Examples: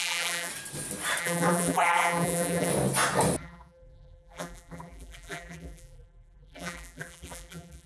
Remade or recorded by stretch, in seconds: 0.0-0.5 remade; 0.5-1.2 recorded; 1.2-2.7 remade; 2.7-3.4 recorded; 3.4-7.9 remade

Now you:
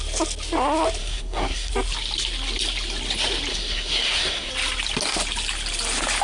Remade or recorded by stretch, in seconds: 0.0-1.0 recorded; 1.0-1.7 remade; 1.7-3.5 recorded; 3.5-4.5 remade; 4.5-6.2 recorded

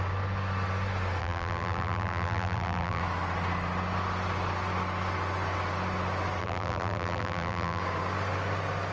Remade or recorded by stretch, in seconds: 0.0-1.2 recorded; 1.2-3.0 remade; 3.0-6.4 recorded; 6.4-7.8 remade; 7.8-8.9 recorded

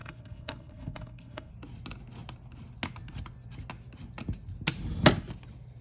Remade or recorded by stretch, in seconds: 0.0-1.5 remade; 1.5-5.8 recorded

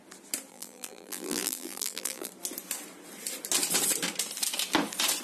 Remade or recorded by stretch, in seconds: 0.0-0.5 recorded; 0.5-2.3 remade; 2.3-5.2 recorded